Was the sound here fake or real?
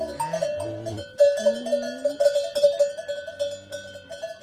real